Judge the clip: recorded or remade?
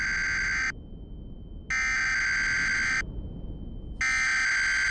recorded